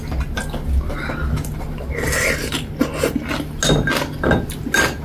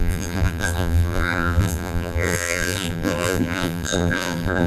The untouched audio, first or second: first